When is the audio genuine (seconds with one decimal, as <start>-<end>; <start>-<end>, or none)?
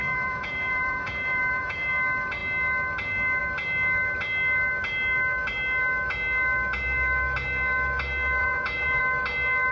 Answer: 1.9-8.4; 9.0-9.7